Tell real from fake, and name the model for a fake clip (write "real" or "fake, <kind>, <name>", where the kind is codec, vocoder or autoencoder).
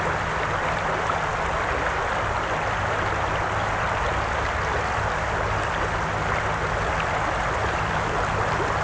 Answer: real